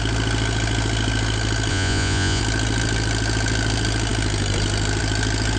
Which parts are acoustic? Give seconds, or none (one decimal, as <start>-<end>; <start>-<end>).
0.0-1.7; 2.4-5.6